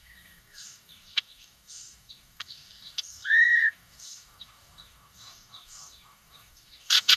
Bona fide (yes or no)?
no